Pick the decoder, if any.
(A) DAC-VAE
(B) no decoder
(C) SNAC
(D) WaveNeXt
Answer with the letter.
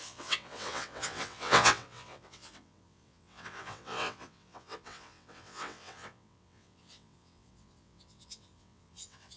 D